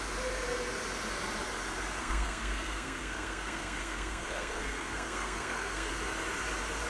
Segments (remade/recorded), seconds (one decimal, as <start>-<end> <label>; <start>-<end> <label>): 0.0-2.0 recorded; 2.0-5.9 remade; 5.9-6.9 recorded